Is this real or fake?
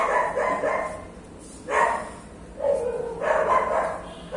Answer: real